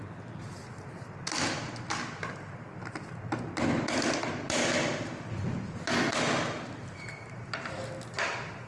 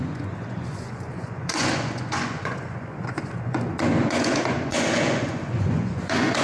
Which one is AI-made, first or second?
second